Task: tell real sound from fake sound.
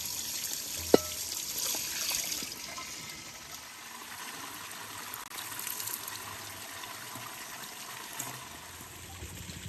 real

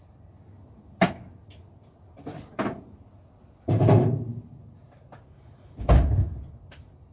real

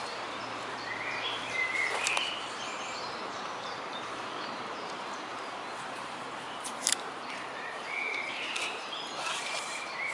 fake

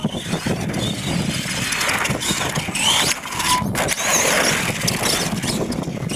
real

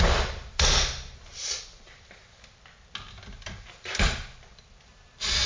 real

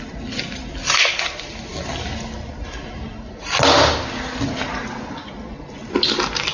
real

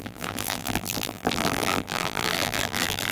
fake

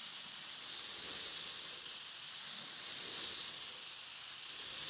real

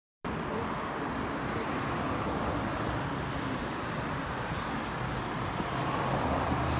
real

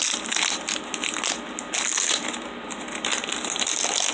real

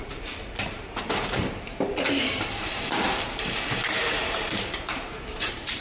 fake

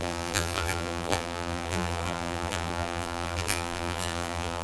fake